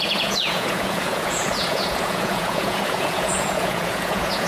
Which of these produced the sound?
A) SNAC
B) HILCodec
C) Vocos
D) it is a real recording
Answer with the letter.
C